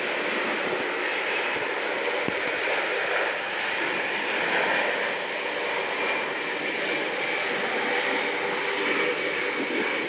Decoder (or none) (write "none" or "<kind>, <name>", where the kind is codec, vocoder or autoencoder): none